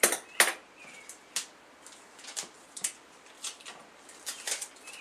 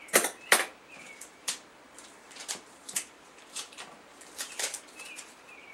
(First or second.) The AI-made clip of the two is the second